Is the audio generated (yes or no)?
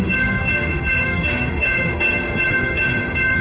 yes